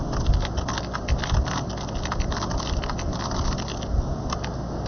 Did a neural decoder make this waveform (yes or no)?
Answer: no